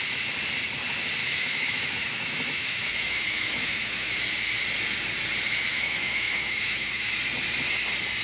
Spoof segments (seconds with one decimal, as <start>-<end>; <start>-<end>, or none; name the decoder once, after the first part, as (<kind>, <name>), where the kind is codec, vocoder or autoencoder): 1.2-4.1 (autoencoder, DAC-VAE); 5.7-7.1